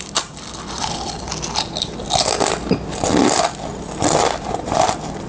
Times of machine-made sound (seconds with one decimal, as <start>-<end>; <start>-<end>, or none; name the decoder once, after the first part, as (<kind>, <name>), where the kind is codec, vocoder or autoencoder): 0.0-1.3 (vocoder, BigVGAN v2); 4.2-5.3